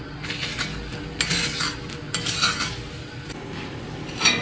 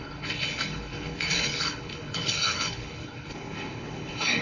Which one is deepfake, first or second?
second